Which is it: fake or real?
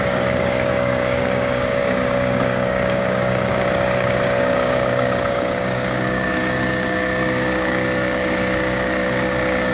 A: fake